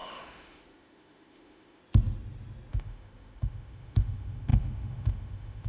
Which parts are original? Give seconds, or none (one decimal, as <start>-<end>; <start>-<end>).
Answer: 1.8-2.7